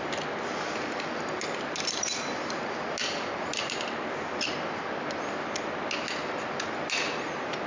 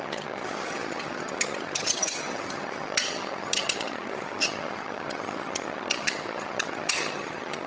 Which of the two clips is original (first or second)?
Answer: first